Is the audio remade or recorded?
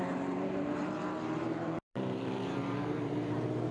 remade